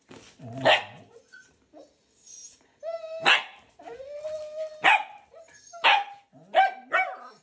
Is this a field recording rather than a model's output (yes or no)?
yes